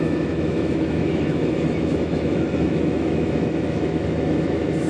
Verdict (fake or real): fake